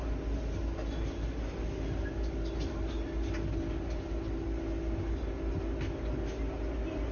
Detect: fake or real real